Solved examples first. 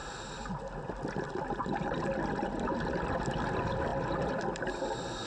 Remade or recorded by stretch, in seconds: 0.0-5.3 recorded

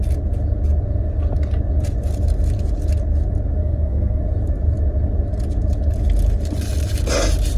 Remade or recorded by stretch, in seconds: 0.0-3.6 recorded; 3.6-4.2 remade; 4.2-7.6 recorded

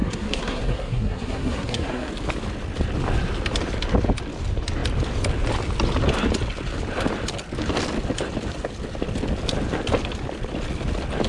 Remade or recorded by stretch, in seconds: 0.0-2.1 remade; 2.1-11.3 recorded